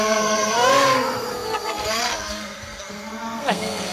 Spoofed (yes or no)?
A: yes